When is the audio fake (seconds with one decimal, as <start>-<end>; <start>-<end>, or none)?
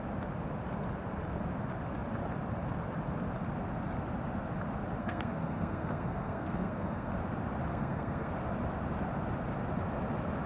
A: 5.0-7.1; 7.7-8.3